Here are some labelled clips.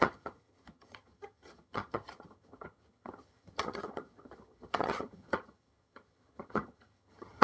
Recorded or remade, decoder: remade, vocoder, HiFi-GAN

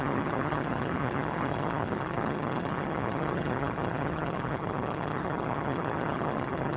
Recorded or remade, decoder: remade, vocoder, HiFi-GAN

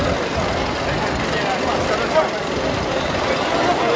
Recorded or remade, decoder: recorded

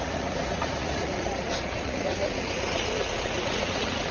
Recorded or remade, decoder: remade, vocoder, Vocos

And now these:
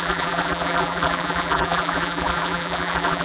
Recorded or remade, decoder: remade, vocoder, BigVGAN v2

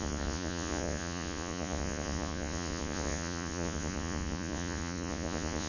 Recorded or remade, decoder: remade, vocoder, Vocos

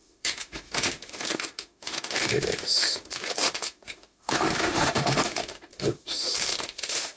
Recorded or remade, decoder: remade, autoencoder, DAC-VAE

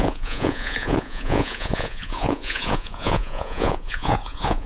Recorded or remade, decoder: remade, vocoder, Vocos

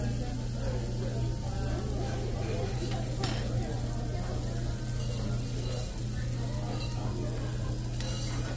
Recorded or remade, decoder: recorded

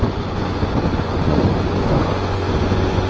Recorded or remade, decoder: remade, vocoder, Vocos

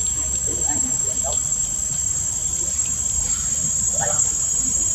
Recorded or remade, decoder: remade, vocoder, BigVGAN v2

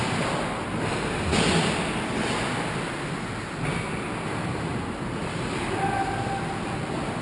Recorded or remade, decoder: recorded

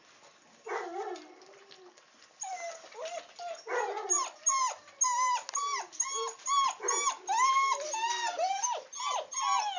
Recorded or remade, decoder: recorded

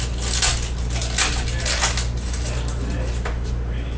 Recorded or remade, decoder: recorded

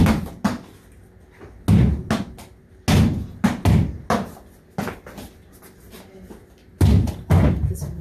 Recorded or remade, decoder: recorded